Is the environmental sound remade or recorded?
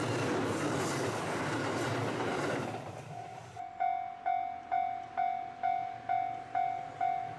recorded